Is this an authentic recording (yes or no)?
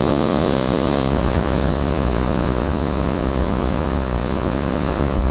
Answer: no